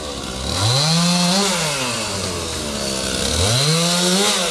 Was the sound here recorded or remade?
recorded